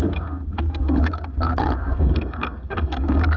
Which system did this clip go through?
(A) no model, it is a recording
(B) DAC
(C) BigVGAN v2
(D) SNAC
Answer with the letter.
D